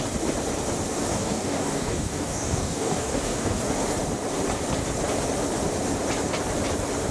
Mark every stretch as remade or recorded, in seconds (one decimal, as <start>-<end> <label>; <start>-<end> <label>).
0.0-1.1 recorded; 1.1-3.7 remade; 3.7-7.1 recorded